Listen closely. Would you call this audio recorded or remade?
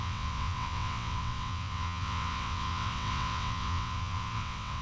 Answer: remade